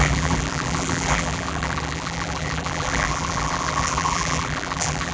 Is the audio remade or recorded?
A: remade